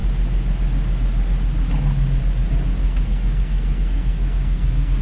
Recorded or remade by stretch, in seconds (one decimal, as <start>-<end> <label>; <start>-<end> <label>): 0.0-2.8 recorded; 2.8-5.0 remade